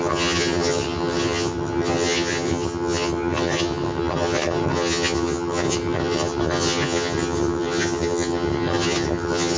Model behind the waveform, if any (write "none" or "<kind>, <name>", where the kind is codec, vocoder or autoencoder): vocoder, HiFi-GAN